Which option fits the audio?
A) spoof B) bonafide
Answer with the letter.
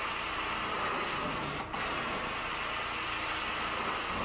B